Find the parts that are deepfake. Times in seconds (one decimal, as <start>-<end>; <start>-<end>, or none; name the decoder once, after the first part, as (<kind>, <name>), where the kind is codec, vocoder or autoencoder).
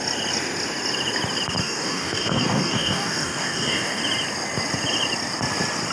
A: 1.6-4.0 (codec, DAC)